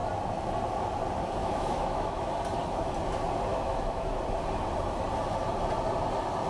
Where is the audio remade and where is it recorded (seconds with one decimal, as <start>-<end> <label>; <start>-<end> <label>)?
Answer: 0.0-1.4 recorded; 1.4-2.3 remade; 2.3-3.5 recorded; 3.5-4.2 remade; 4.2-6.5 recorded